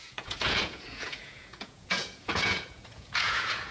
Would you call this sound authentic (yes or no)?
no